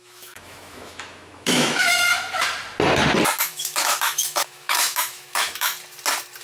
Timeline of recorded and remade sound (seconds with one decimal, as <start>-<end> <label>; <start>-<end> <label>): 0.0-2.1 remade; 2.1-3.4 recorded; 3.4-5.7 remade; 5.7-6.4 recorded